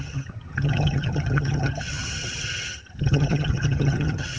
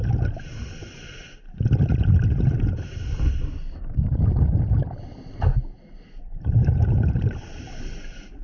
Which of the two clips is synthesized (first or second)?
first